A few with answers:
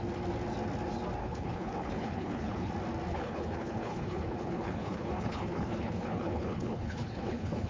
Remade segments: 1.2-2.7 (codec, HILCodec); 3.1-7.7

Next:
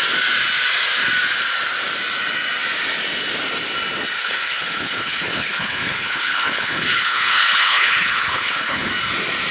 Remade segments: 4.2-8.9 (codec, HILCodec)